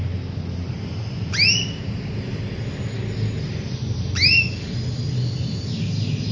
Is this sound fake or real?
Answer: real